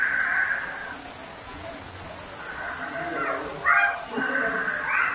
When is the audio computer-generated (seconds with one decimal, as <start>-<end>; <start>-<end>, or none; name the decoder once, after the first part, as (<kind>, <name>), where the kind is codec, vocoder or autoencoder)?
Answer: 0.8-2.4 (vocoder, Vocos)